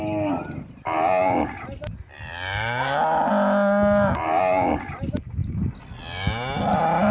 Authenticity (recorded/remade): recorded